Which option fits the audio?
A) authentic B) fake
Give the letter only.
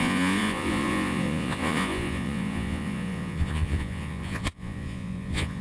B